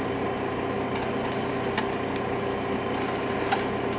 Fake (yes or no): no